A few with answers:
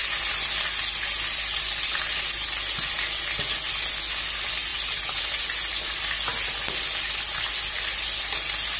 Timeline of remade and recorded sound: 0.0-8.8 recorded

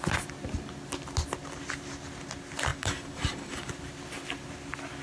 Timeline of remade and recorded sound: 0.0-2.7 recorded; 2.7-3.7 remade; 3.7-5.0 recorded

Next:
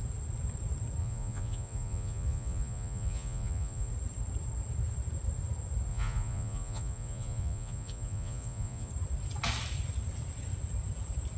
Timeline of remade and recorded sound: 0.0-1.0 recorded; 1.0-3.9 remade; 3.9-5.9 recorded; 5.9-8.9 remade; 8.9-11.4 recorded